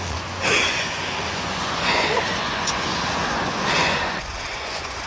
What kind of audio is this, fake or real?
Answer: fake